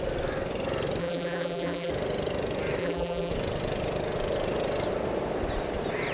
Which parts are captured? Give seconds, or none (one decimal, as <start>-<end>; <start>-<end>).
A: 0.0-1.0; 1.9-2.8; 3.3-6.1